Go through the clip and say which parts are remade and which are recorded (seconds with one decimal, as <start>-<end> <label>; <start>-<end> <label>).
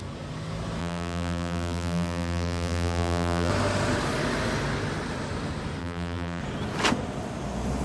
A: 0.0-0.8 recorded; 0.8-3.5 remade; 3.5-5.8 recorded; 5.8-6.4 remade; 6.4-7.8 recorded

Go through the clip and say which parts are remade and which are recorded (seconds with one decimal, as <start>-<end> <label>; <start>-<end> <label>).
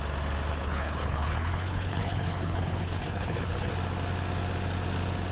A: 0.0-0.5 recorded; 0.5-3.7 remade; 3.7-5.3 recorded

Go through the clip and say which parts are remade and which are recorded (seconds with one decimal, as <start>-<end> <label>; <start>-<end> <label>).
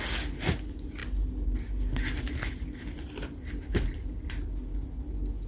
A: 0.0-5.5 recorded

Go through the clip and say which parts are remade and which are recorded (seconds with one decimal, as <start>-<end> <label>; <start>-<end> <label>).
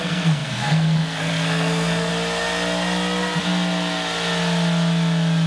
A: 0.0-2.1 remade; 2.1-5.5 recorded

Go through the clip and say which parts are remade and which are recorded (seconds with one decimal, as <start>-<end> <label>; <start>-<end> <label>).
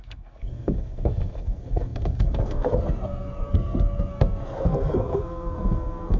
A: 0.0-6.2 remade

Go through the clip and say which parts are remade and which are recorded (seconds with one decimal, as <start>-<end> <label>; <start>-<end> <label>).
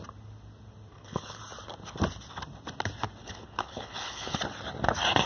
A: 0.0-0.9 recorded; 0.9-1.4 remade; 1.4-3.2 recorded; 3.2-4.4 remade; 4.4-5.3 recorded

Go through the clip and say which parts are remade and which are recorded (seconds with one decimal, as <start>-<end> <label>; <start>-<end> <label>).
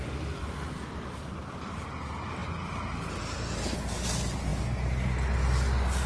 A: 0.0-6.1 recorded